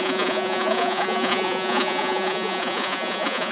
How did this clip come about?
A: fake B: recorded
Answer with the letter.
A